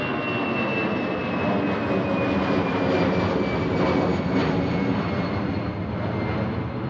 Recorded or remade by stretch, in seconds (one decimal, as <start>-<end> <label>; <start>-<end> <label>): 0.0-6.9 recorded

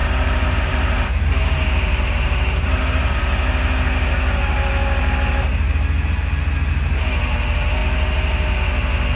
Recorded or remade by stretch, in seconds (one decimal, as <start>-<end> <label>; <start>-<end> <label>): 0.0-3.2 remade; 3.2-9.2 recorded